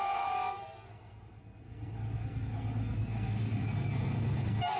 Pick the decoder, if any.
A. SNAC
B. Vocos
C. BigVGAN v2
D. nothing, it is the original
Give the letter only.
A